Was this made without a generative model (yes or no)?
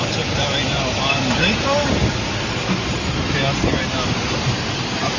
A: yes